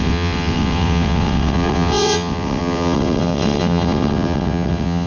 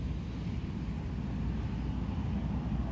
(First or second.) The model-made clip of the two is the first